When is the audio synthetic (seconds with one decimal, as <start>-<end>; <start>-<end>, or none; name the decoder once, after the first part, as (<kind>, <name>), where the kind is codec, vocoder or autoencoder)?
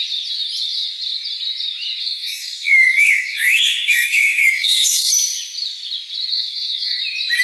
2.0-5.1 (codec, DAC); 6.3-7.0